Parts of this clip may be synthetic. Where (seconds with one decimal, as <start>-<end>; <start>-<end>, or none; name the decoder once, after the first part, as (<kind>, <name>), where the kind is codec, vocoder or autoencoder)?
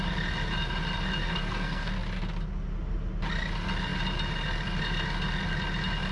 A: 1.2-1.9 (codec, SNAC)